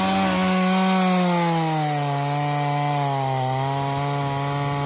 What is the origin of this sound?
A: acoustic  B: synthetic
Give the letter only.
A